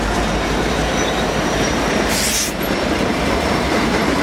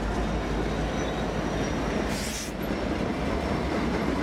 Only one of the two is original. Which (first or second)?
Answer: second